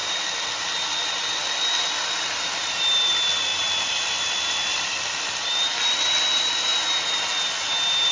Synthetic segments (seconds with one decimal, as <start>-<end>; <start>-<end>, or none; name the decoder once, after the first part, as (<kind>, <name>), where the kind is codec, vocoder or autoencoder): 0.0-6.7 (vocoder, BigVGAN v2)